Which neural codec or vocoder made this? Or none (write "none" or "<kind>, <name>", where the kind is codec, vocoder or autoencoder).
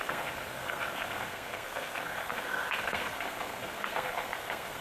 codec, SNAC